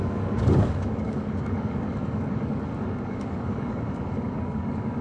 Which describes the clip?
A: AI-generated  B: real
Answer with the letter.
A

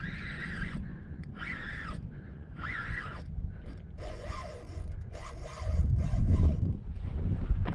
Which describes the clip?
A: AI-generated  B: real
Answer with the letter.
A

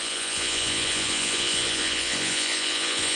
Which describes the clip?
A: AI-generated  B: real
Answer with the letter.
A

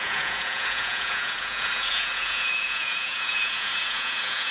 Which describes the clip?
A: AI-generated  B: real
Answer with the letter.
A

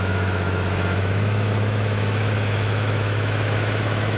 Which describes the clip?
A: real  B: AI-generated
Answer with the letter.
B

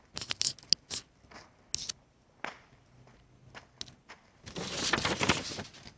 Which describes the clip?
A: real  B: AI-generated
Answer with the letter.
A